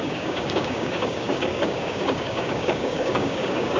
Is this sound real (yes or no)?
no